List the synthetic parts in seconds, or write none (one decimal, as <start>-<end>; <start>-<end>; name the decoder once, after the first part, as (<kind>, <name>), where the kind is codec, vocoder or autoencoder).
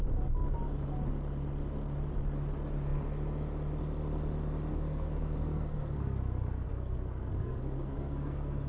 4.7-8.7 (codec, SNAC)